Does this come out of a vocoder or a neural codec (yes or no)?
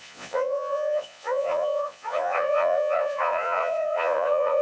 yes